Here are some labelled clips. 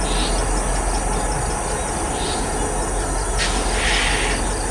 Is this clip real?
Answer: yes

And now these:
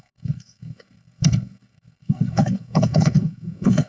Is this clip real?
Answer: no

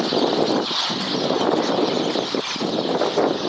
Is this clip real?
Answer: yes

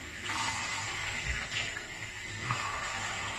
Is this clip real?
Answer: no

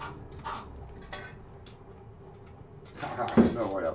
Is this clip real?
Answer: yes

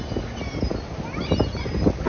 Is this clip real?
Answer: yes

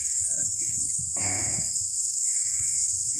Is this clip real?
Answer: no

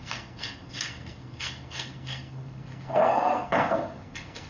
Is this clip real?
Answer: no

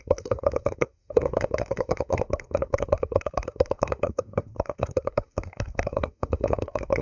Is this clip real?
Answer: no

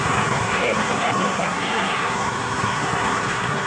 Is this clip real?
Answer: no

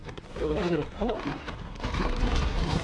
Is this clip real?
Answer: no